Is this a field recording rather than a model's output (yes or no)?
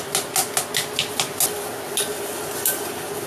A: yes